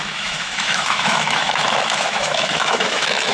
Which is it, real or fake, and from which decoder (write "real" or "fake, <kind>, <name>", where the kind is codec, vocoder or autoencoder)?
fake, autoencoder, DAC-VAE